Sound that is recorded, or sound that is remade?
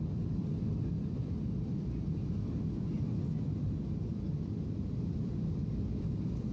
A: recorded